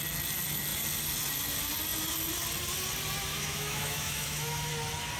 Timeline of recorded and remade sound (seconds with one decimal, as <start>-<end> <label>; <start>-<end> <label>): 0.0-3.3 recorded; 3.3-4.7 remade; 4.7-5.2 recorded